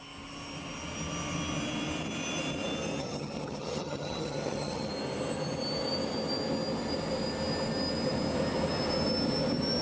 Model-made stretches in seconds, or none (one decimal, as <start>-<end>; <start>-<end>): 3.0-4.9